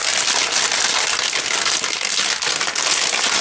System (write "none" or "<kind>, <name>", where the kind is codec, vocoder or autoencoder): none